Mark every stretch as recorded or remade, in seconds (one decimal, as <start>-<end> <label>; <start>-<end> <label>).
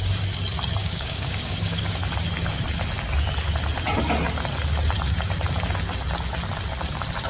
0.0-0.8 recorded; 0.8-2.0 remade; 2.0-7.3 recorded